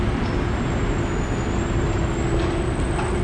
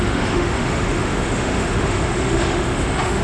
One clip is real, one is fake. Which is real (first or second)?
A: first